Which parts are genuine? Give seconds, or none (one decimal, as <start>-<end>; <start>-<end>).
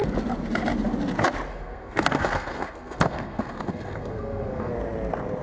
0.0-1.5; 4.7-5.4